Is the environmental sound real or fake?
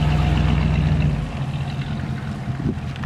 real